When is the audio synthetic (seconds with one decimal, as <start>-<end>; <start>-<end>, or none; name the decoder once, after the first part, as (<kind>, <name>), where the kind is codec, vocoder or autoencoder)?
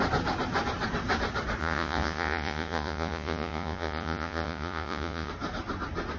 1.6-5.3 (vocoder, Vocos)